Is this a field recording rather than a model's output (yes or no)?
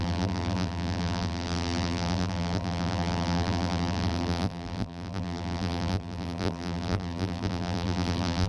no